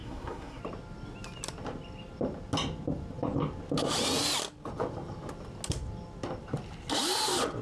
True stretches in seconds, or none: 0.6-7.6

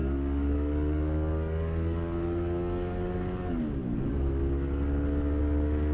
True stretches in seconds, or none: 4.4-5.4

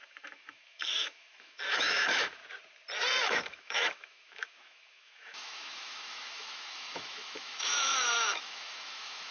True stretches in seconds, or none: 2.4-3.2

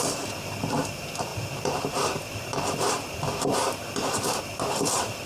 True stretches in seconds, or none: none

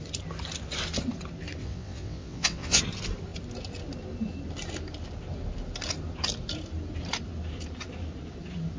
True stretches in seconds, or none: 0.0-1.6; 2.8-8.8